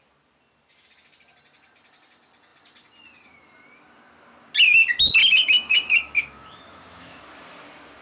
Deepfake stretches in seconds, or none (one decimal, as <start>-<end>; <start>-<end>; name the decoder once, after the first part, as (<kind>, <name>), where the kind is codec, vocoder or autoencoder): 5.2-7.2 (autoencoder, DAC-VAE)